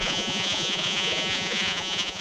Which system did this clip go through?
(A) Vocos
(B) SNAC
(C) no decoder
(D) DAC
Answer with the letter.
A